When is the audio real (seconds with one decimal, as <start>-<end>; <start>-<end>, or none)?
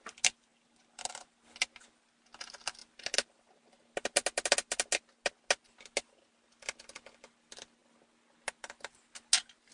0.0-9.7